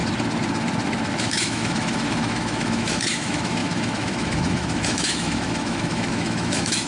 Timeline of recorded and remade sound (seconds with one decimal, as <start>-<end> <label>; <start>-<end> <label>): 0.0-1.2 recorded; 1.2-6.9 remade